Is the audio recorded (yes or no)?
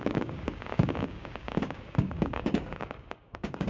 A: no